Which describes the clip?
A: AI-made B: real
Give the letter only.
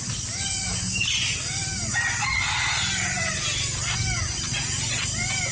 B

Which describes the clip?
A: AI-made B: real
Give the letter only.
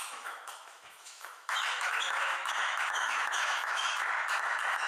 A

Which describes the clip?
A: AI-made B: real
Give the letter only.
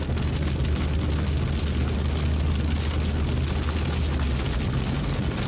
B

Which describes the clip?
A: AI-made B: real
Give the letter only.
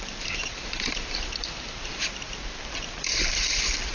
A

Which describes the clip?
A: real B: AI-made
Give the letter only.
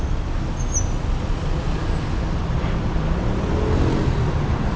A